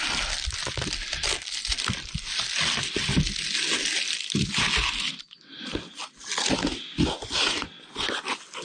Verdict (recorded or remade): recorded